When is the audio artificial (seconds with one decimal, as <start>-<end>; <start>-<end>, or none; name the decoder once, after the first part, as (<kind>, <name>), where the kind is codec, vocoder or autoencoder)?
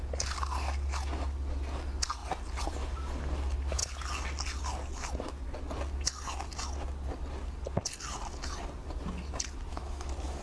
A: 9.7-10.4 (autoencoder, DAC-VAE)